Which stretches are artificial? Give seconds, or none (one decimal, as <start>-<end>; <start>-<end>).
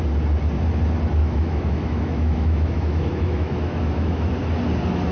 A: 1.2-4.3